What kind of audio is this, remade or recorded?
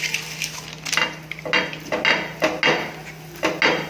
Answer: recorded